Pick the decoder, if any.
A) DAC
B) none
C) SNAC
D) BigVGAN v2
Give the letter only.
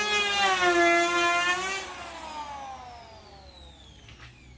B